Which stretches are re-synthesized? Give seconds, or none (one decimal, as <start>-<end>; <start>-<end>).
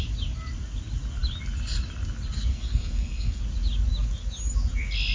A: 2.5-3.4